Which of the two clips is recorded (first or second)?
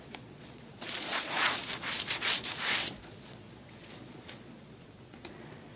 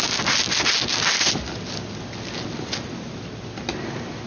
second